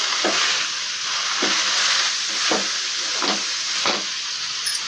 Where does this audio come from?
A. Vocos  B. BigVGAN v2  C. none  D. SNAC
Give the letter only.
B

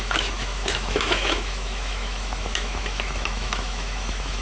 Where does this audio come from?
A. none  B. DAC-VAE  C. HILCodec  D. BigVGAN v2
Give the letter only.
B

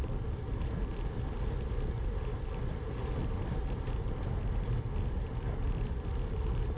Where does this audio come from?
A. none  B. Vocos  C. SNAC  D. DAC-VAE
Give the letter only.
A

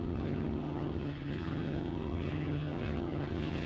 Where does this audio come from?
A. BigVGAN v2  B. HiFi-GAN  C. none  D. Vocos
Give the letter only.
B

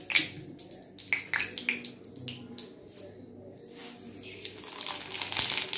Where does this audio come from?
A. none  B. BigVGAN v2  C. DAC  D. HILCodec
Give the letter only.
A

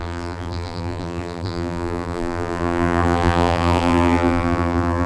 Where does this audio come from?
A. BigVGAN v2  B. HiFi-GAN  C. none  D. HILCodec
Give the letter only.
A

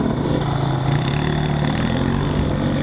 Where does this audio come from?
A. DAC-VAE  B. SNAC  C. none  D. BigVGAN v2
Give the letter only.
C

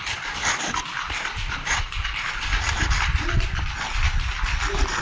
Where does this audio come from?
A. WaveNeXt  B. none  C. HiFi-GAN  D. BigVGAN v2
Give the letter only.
D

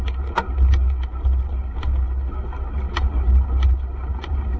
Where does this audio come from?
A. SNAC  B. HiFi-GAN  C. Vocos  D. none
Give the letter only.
D